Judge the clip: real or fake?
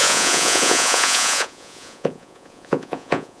fake